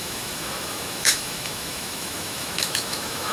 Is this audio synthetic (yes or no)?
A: yes